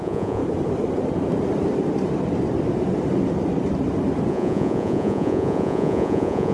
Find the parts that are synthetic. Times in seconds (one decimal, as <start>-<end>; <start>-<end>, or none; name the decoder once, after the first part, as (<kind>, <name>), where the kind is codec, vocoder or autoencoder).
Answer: 0.0-0.4 (vocoder, Vocos); 4.3-6.5